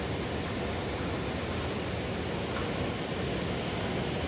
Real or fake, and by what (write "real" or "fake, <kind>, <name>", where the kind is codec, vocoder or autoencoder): real